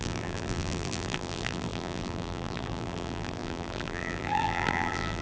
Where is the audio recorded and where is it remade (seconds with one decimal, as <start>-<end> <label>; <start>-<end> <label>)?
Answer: 0.0-5.2 remade